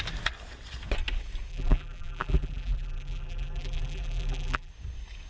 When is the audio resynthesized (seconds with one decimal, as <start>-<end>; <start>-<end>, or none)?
1.5-4.7